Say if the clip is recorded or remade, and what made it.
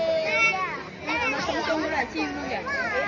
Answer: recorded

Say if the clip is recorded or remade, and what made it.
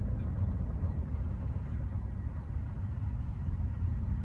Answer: recorded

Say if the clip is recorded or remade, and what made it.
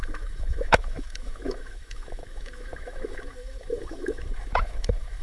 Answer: remade, autoencoder, DAC-VAE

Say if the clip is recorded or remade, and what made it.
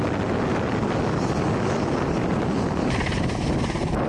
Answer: recorded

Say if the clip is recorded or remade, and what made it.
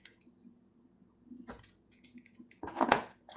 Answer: remade, vocoder, Vocos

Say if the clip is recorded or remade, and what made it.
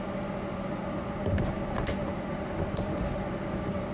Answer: recorded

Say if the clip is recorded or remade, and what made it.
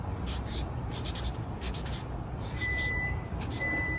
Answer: remade, vocoder, BigVGAN v2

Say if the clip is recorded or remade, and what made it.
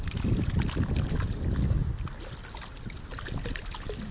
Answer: recorded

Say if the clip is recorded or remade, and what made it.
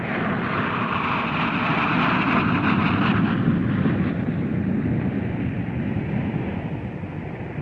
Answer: remade, vocoder, BigVGAN v2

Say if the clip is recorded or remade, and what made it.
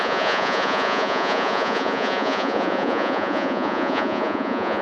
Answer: remade, vocoder, Vocos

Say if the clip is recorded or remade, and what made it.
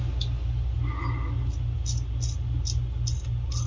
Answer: recorded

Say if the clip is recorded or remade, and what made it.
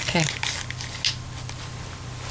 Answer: recorded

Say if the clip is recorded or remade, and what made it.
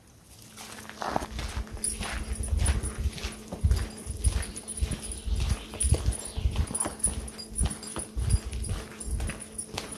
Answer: recorded